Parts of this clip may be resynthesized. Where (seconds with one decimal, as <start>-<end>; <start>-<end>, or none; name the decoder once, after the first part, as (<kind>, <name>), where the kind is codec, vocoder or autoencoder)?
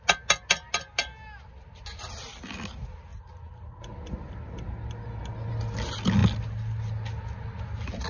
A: none